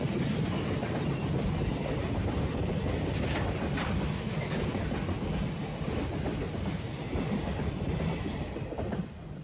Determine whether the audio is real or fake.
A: real